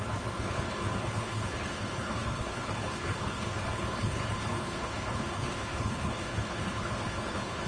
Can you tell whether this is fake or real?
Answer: fake